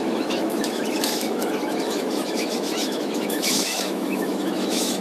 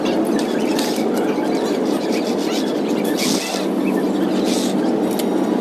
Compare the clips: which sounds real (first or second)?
second